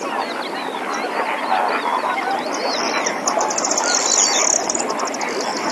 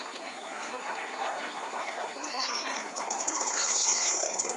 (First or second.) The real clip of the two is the first